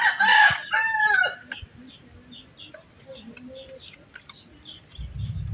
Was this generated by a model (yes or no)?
no